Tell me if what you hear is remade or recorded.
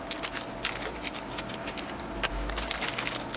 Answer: recorded